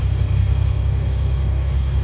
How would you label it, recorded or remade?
remade